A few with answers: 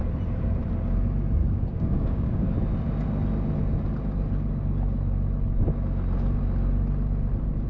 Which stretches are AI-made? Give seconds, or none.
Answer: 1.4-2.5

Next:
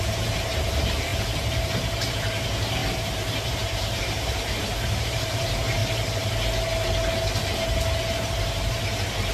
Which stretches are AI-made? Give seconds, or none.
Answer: 0.0-5.8; 8.1-9.3

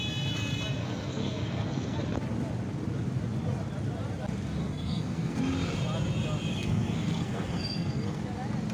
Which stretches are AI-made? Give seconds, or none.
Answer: 0.8-2.0; 4.6-5.4; 6.5-8.2

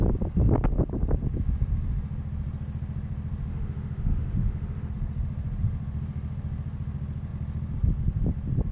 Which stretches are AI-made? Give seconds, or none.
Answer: 3.5-4.9